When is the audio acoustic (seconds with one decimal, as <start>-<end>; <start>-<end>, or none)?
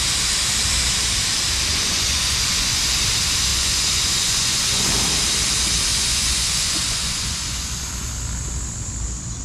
0.0-1.7; 2.8-3.5; 5.0-5.9; 8.1-9.4